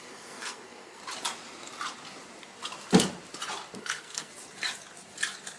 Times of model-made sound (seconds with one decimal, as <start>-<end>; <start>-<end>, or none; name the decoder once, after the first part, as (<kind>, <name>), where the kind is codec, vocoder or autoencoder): 0.0-1.0 (codec, SNAC); 3.8-4.3